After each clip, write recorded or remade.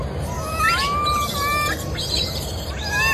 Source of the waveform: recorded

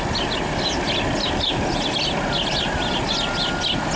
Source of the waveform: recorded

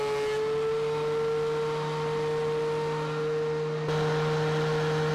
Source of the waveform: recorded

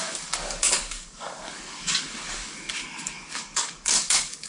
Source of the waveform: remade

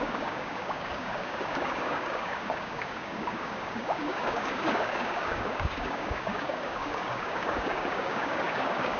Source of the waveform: remade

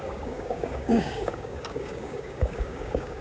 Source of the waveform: remade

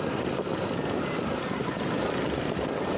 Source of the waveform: recorded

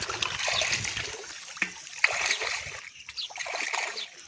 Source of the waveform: recorded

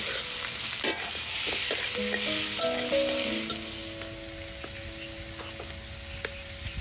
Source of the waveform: recorded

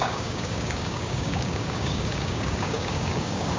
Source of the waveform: remade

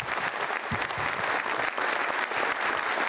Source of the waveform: recorded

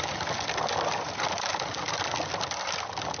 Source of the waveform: recorded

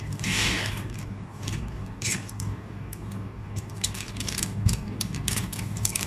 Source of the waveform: remade